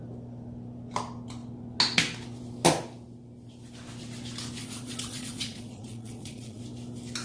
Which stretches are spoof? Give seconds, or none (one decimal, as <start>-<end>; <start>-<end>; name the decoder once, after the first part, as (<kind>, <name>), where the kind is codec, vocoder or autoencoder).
4.6-6.6 (vocoder, Vocos)